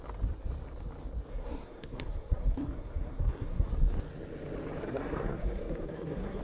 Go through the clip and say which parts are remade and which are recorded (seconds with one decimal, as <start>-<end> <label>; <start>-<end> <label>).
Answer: 0.0-1.3 recorded; 1.3-3.7 remade; 3.7-4.8 recorded; 4.8-6.4 remade